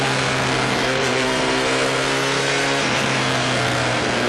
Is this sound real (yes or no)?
no